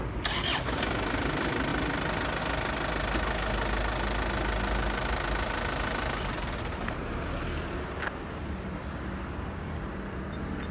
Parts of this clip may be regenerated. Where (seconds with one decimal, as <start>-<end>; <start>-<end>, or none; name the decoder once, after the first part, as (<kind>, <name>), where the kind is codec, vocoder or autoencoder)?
none